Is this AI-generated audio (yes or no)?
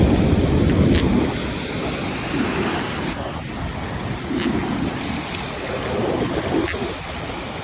no